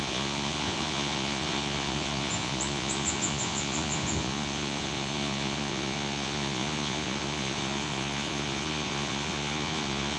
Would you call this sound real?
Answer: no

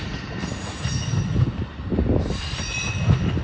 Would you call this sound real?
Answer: yes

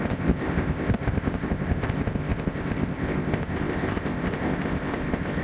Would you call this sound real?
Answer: no